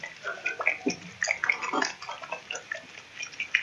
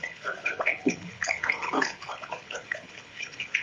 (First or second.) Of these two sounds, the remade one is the second